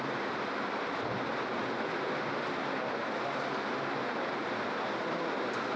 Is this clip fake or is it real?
real